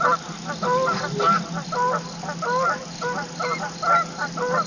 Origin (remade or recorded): recorded